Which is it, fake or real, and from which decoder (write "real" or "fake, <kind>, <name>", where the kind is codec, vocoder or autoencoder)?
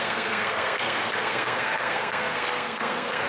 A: fake, codec, SNAC